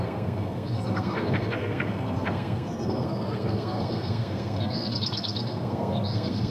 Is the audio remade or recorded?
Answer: remade